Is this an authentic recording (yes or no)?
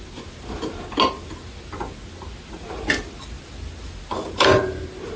yes